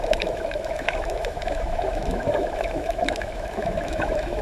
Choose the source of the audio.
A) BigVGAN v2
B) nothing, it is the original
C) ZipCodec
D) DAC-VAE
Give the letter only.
D